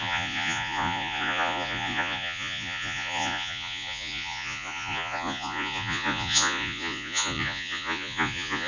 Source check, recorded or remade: remade